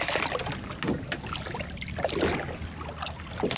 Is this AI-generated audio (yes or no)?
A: no